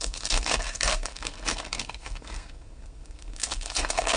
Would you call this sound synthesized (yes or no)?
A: yes